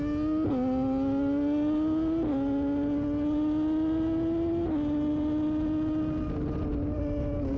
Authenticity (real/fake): real